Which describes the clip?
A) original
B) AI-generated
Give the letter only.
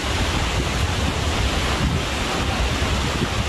A